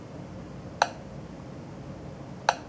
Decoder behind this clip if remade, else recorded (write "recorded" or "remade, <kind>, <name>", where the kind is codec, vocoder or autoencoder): recorded